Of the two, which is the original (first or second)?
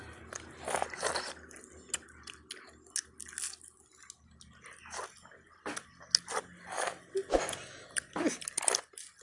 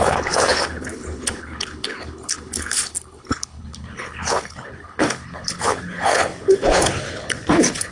first